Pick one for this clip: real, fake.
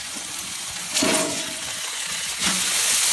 fake